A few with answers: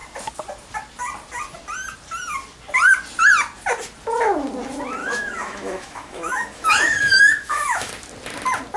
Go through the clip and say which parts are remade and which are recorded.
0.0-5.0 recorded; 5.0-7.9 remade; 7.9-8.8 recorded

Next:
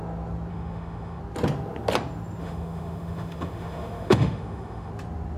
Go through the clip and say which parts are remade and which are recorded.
0.0-0.5 recorded; 0.5-1.2 remade; 1.2-2.4 recorded; 2.4-4.9 remade; 4.9-5.4 recorded

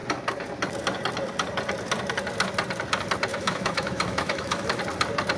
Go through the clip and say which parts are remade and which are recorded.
0.0-3.3 recorded; 3.3-4.8 remade; 4.8-5.4 recorded